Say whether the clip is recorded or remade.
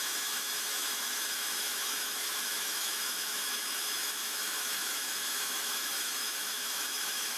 remade